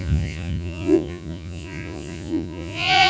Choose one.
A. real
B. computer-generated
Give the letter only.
B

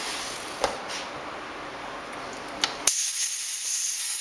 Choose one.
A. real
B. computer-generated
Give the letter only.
A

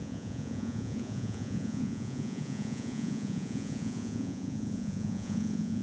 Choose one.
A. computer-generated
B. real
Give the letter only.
A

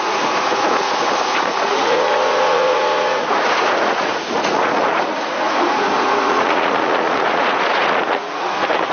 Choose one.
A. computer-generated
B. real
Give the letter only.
A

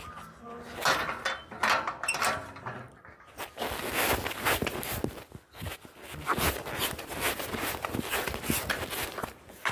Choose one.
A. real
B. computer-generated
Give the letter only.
A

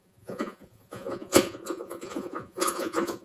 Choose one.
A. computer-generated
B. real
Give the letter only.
A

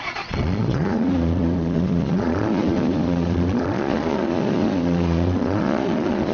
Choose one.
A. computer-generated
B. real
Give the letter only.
A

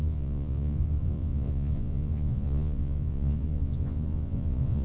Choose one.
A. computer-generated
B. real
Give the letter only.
A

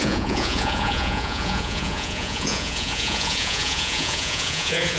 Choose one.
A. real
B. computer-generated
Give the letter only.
B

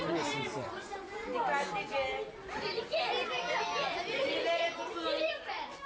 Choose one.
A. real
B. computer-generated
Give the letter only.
A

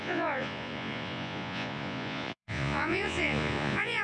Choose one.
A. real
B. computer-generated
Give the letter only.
B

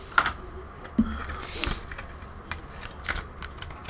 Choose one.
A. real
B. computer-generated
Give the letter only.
A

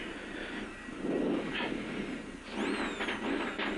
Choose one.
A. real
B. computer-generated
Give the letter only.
A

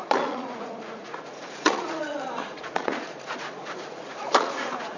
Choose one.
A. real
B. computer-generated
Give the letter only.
B